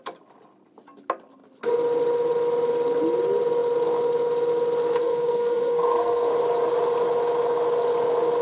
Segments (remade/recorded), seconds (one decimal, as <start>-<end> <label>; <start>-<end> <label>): 0.0-5.0 recorded; 5.0-6.3 remade; 6.3-8.4 recorded

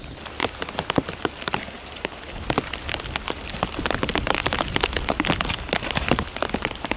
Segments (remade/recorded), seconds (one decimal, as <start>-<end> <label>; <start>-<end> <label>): 0.0-7.0 recorded

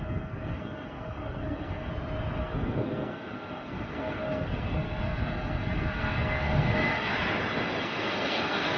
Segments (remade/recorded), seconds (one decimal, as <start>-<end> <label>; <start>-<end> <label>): 0.0-1.9 remade; 1.9-2.4 recorded; 2.4-7.1 remade; 7.1-7.8 recorded; 7.8-8.8 remade

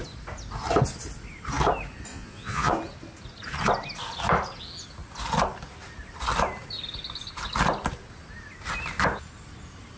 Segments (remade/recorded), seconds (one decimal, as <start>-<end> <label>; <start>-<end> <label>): 0.0-2.1 recorded; 2.1-2.7 remade; 2.7-10.0 recorded

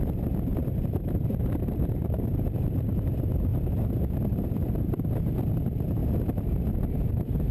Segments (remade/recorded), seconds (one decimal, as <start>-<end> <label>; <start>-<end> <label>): 0.0-6.0 remade; 6.0-7.1 recorded; 7.1-7.5 remade

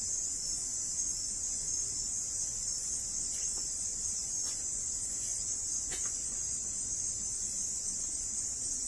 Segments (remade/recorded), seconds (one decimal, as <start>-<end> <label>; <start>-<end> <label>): 0.0-8.9 remade